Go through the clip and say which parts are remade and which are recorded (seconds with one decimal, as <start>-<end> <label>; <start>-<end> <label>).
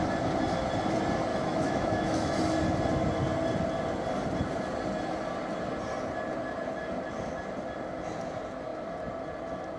0.0-1.3 recorded; 1.3-2.3 remade; 2.3-9.8 recorded